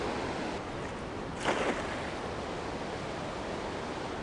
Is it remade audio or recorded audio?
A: recorded